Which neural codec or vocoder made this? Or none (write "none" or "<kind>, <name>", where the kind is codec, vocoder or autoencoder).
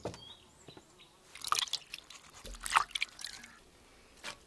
none